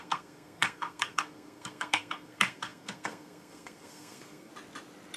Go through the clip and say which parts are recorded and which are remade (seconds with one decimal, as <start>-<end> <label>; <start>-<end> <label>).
0.0-4.5 remade; 4.5-5.2 recorded